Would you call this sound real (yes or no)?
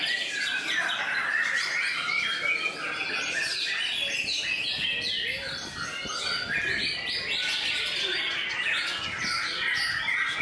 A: yes